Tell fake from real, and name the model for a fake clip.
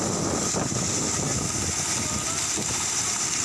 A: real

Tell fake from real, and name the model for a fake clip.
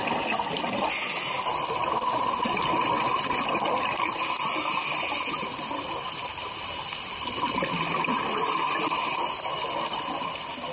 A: real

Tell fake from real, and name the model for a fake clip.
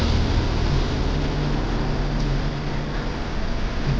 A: real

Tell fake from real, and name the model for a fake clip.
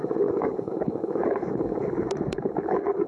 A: fake, codec, DAC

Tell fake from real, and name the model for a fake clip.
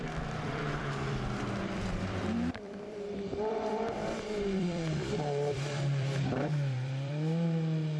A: fake, vocoder, BigVGAN v2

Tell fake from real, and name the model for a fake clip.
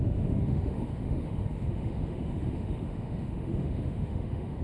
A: fake, autoencoder, DAC-VAE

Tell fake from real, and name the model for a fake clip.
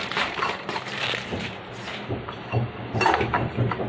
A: fake, vocoder, BigVGAN v2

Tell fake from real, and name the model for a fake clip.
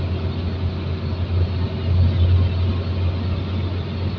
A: real